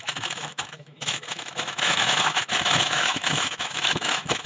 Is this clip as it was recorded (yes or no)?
no